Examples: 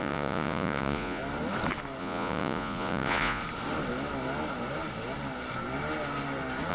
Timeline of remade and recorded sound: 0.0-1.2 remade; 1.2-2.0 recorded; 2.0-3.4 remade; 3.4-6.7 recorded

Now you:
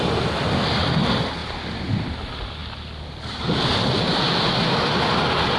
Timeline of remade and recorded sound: 0.0-5.6 recorded

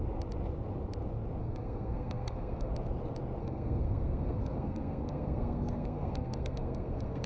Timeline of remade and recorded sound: 0.0-1.4 recorded; 1.4-2.7 remade; 2.7-3.4 recorded; 3.4-7.3 remade